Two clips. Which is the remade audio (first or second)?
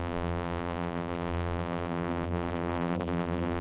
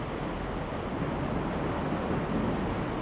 first